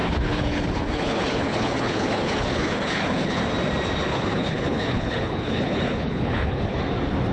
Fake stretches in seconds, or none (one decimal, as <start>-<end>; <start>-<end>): 0.0-3.4; 4.1-6.8